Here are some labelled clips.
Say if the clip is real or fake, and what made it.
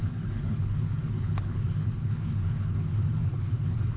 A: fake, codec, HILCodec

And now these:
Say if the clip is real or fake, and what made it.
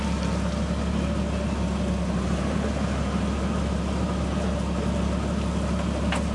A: real